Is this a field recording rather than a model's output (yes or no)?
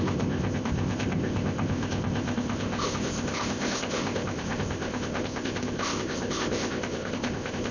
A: no